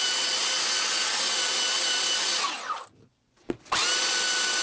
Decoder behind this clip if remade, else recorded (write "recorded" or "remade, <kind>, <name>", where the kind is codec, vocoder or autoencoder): recorded